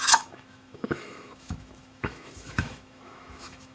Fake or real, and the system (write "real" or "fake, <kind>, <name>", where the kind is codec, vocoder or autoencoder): fake, autoencoder, DAC-VAE